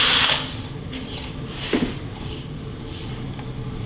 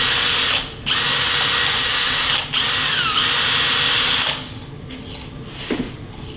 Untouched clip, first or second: second